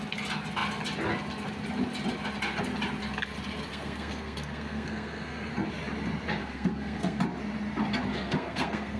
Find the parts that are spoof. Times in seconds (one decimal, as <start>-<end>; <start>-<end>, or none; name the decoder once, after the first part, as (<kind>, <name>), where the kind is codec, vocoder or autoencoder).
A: 3.7-5.5 (codec, SNAC); 6.4-7.2; 8.1-9.0